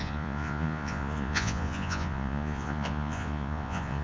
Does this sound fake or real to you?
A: fake